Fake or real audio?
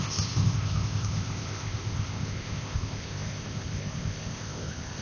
fake